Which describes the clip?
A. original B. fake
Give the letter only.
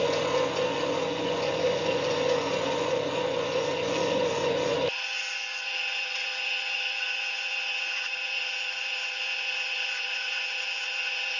B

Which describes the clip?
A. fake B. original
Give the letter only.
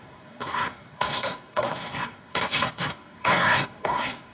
A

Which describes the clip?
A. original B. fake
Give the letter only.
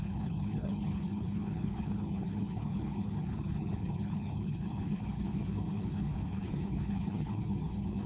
B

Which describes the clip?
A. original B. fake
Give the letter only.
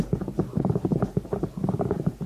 A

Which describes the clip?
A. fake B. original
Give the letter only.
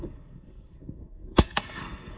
A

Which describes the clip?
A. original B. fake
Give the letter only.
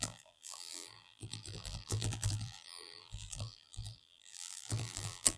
B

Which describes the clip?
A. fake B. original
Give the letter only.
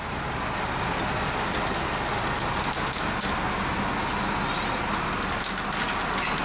B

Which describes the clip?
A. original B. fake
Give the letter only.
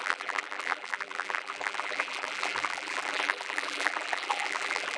B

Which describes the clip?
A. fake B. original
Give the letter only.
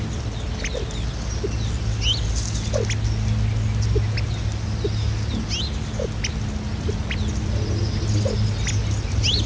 B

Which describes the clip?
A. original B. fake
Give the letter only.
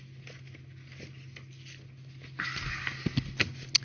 A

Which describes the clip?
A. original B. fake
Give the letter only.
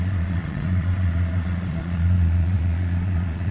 B